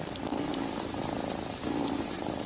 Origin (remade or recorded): remade